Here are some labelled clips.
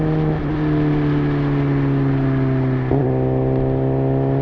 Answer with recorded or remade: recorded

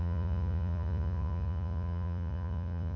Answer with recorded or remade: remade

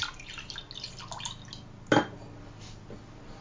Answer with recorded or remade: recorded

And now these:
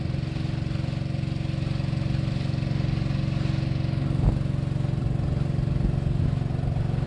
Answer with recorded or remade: recorded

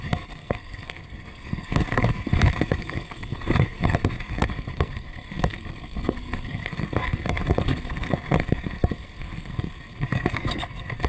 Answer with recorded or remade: remade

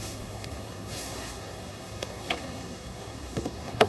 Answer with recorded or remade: remade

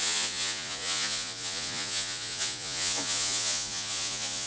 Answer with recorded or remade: remade